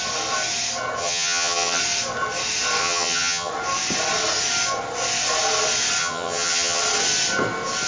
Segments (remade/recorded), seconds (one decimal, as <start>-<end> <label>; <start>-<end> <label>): 0.0-1.0 recorded; 1.0-1.8 remade; 1.8-2.8 recorded; 2.8-3.5 remade; 3.5-6.0 recorded; 6.0-6.8 remade; 6.8-7.9 recorded